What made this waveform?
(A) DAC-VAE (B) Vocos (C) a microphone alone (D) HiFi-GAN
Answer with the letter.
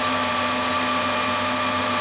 C